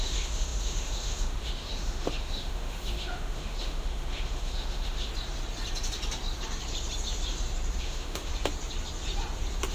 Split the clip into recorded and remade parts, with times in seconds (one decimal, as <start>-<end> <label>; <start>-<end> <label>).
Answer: 0.0-5.1 remade; 5.1-7.8 recorded; 7.8-8.3 remade; 8.3-9.7 recorded